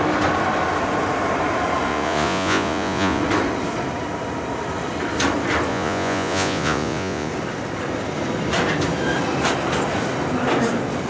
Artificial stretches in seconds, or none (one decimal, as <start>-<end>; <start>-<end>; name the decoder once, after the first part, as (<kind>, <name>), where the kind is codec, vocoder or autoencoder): 1.9-3.2 (vocoder, Vocos); 5.7-7.3